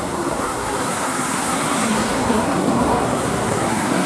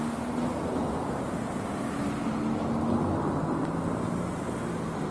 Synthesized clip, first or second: first